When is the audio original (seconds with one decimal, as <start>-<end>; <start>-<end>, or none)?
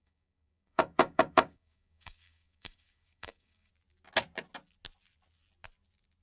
3.7-6.2